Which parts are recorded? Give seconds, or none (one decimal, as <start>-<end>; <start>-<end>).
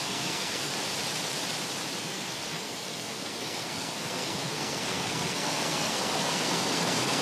0.7-2.0